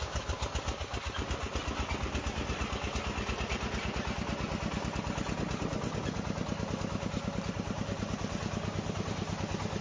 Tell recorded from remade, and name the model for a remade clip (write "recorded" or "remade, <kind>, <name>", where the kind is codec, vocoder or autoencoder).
recorded